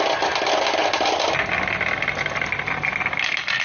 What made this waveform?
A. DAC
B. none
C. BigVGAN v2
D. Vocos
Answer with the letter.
B